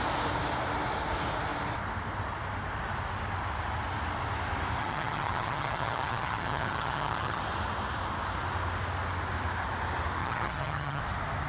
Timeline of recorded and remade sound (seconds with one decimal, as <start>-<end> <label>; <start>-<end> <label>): 0.0-4.8 recorded; 4.8-7.4 remade; 7.4-10.2 recorded; 10.2-11.0 remade; 11.0-11.5 recorded